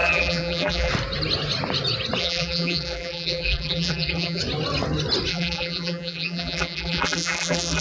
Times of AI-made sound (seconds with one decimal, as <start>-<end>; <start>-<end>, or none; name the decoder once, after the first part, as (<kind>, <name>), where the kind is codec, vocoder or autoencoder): 0.0-0.9 (vocoder, BigVGAN v2); 2.2-4.4; 5.3-7.8